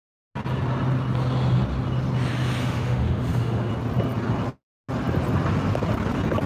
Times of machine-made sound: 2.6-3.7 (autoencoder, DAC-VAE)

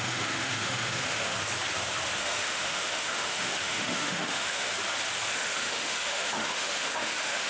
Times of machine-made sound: 0.0-1.3 (autoencoder, DAC-VAE); 2.2-4.7; 5.3-7.5